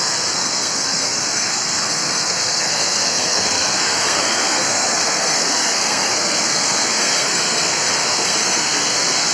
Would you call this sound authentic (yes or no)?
no